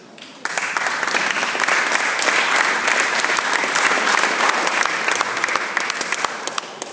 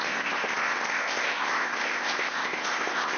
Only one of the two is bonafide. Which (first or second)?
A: first